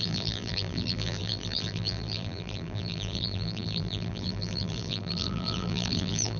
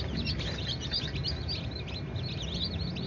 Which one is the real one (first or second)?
second